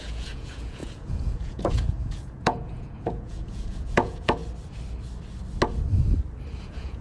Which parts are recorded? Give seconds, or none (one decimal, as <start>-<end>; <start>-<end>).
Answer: 4.4-6.6